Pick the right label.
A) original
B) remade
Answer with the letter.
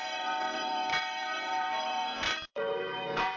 B